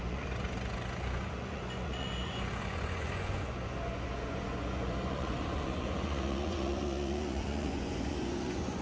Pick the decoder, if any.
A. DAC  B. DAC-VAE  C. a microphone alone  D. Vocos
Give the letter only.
D